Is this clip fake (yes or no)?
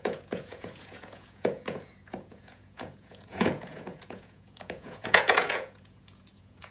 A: yes